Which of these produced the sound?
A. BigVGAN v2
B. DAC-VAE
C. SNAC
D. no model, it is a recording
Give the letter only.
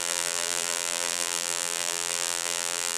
A